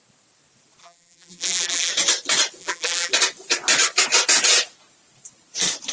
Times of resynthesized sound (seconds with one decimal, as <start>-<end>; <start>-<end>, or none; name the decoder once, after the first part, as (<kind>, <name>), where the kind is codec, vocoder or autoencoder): 0.8-1.9 (vocoder, BigVGAN v2); 2.6-3.1